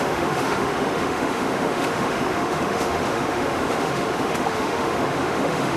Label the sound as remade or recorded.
remade